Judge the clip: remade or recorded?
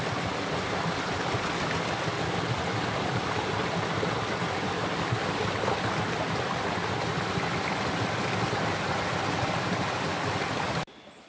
recorded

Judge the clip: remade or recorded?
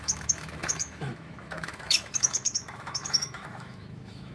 remade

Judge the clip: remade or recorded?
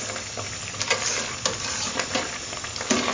recorded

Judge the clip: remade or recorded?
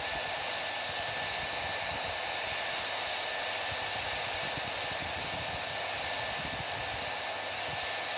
recorded